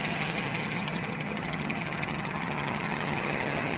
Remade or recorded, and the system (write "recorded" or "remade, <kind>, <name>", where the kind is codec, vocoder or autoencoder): remade, vocoder, HiFi-GAN